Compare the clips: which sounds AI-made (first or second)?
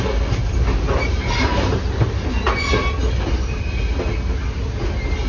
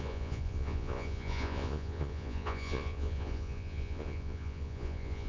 second